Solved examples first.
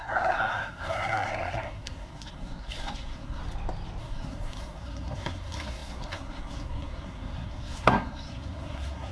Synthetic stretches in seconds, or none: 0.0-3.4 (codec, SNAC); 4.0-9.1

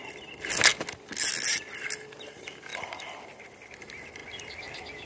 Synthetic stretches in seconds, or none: none

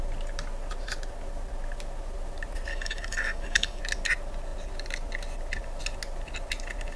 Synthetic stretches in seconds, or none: 2.7-3.8 (codec, DAC)

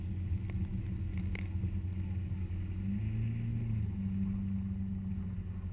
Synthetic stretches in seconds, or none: none

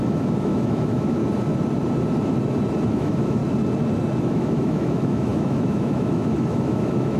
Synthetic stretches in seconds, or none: 0.0-1.2 (autoencoder, DAC-VAE); 2.9-3.4; 4.2-7.2

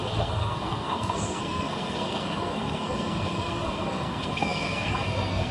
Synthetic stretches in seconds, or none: 0.0-5.5 (codec, SNAC)

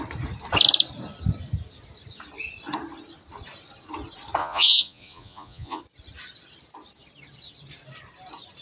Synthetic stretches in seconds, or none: 4.4-5.8 (vocoder, Vocos)

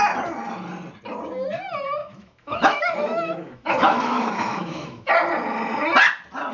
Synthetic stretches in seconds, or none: 2.0-5.1 (autoencoder, DAC-VAE)